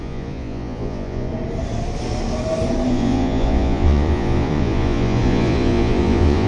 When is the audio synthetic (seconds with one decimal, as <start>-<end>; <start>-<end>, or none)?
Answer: 0.0-1.3; 2.9-6.5